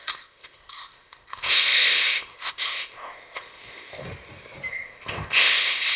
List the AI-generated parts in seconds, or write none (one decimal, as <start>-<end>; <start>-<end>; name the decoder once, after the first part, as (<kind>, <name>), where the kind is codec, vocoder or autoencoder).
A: 0.0-4.0 (codec, ZipCodec); 4.7-6.0